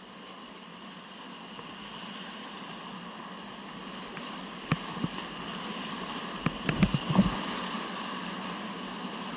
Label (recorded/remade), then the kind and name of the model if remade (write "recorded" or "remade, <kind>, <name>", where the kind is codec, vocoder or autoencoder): recorded